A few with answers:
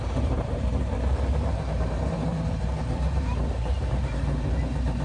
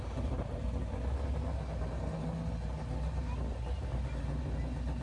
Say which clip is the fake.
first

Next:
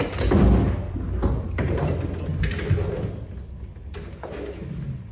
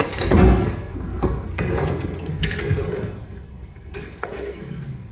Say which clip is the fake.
second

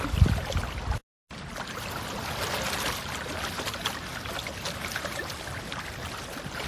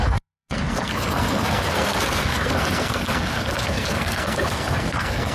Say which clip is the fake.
second